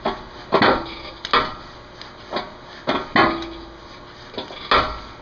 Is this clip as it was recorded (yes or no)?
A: yes